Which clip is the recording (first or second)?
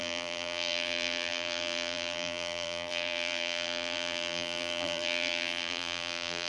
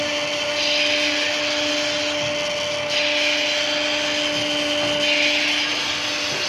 second